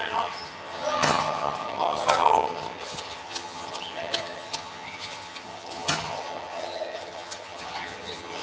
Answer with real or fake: fake